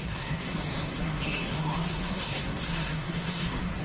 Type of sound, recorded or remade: remade